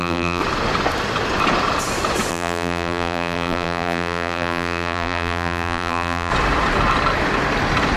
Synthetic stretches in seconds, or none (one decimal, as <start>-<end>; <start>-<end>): 0.0-0.4; 2.3-6.3